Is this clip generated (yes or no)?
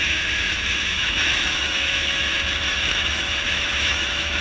yes